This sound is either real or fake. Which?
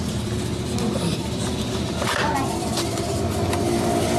real